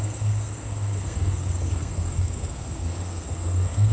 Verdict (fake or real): fake